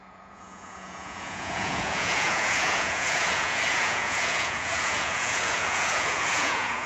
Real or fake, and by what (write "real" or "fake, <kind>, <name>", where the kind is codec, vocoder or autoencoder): fake, vocoder, Vocos